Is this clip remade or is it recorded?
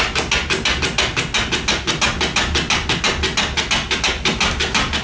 recorded